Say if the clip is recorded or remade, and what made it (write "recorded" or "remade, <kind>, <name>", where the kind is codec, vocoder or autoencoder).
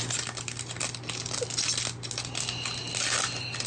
recorded